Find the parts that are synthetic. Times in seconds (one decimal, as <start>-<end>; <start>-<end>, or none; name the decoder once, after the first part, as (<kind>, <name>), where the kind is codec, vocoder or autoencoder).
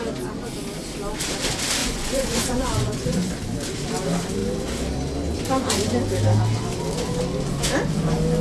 1.8-3.3 (vocoder, Vocos)